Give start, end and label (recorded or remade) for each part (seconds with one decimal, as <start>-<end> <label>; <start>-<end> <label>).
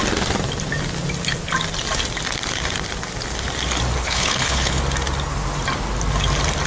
0.0-4.0 recorded; 4.0-4.8 remade; 4.8-6.7 recorded